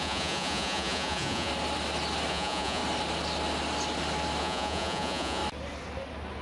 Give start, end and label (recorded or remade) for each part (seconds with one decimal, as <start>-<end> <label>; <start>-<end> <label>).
0.0-1.5 remade; 1.5-2.3 recorded; 2.3-2.8 remade; 2.8-4.4 recorded; 4.4-5.4 remade; 5.4-6.4 recorded